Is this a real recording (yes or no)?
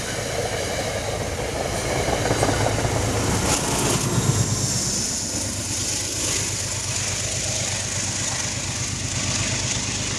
yes